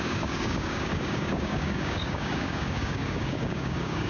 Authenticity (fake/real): fake